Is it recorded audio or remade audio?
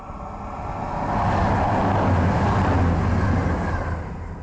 recorded